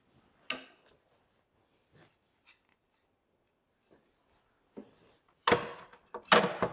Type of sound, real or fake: real